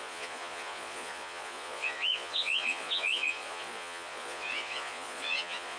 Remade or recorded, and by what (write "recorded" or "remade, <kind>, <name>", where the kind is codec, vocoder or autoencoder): remade, vocoder, Vocos